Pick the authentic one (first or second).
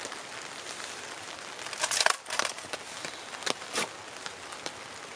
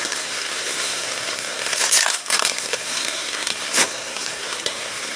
first